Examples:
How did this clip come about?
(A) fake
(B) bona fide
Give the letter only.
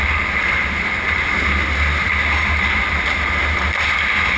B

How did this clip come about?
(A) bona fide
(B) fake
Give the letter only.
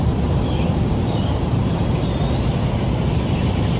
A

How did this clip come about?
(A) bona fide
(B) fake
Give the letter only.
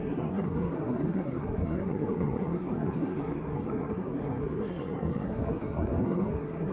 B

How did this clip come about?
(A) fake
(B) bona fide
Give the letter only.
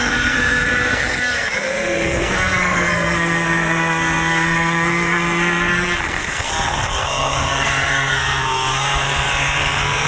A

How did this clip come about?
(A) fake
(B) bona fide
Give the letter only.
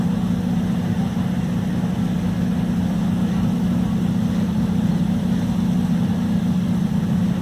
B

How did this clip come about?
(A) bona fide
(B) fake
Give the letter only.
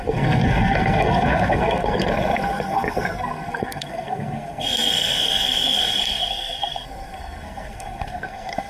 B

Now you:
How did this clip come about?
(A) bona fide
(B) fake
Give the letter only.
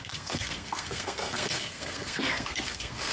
B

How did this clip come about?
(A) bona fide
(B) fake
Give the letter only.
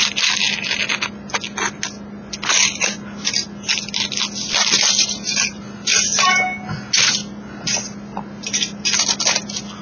A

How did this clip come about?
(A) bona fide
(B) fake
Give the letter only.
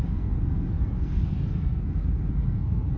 B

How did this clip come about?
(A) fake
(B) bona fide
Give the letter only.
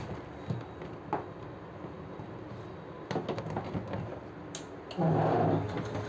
B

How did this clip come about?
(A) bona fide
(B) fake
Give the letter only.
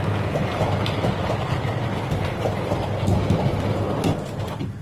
A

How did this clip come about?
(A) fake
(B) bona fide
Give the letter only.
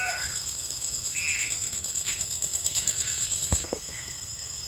A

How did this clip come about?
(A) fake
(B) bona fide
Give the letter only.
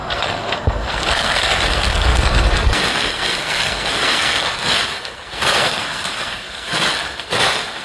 A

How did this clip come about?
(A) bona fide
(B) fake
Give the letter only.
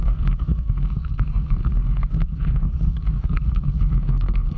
B